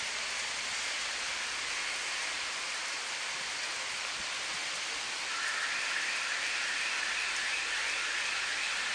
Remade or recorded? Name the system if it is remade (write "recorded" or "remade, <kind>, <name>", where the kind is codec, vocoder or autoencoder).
recorded